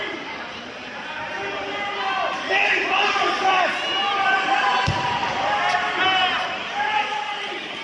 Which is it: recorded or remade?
recorded